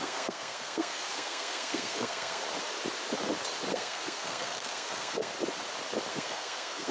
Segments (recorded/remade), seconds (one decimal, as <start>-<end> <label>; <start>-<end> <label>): 0.0-2.4 remade; 2.4-3.7 recorded; 3.7-5.3 remade; 5.3-6.1 recorded; 6.1-6.9 remade